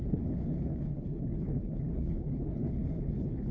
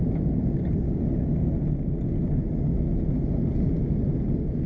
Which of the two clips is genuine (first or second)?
second